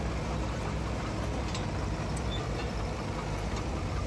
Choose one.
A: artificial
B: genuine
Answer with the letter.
B